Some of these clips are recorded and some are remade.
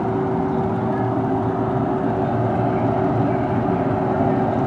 recorded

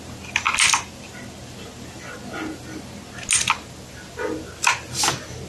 recorded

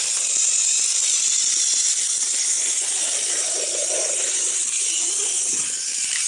recorded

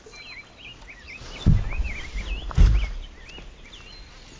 recorded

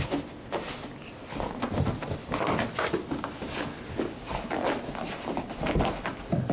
recorded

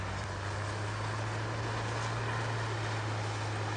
recorded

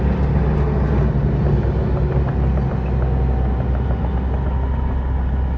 recorded